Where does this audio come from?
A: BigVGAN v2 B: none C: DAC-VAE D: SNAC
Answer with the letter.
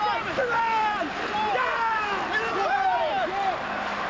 B